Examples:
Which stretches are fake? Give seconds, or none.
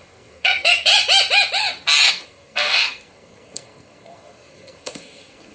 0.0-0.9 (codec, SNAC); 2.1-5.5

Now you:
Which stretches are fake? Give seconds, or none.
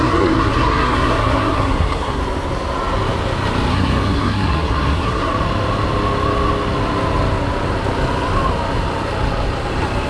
0.0-2.2 (codec, SNAC); 3.7-5.3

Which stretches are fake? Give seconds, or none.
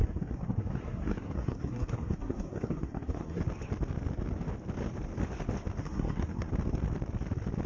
0.0-3.4 (codec, SNAC); 5.8-6.5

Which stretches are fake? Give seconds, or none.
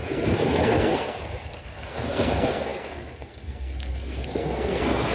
0.0-5.1 (codec, SNAC)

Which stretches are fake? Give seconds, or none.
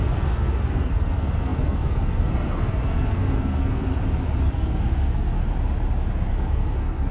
0.0-3.9 (codec, SNAC); 4.4-5.4; 6.3-7.1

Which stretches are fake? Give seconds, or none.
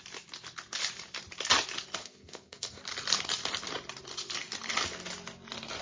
2.0-2.8 (codec, SNAC)